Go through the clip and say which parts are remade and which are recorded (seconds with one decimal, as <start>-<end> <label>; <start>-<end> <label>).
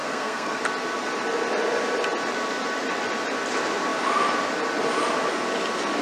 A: 0.0-0.6 remade; 0.6-6.0 recorded